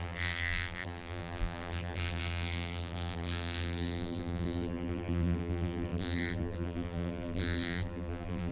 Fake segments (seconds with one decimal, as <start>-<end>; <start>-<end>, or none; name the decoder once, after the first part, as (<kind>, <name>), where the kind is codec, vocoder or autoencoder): 0.0-8.5 (vocoder, BigVGAN v2)